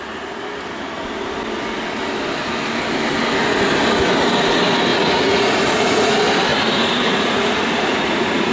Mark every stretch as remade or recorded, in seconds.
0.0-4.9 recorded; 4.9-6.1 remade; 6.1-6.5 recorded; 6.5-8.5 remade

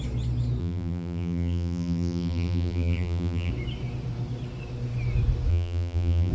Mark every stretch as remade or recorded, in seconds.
0.0-0.6 recorded; 0.6-3.5 remade; 3.5-5.5 recorded; 5.5-6.3 remade

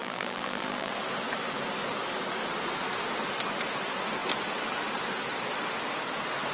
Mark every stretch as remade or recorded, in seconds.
0.0-0.9 remade; 0.9-6.5 recorded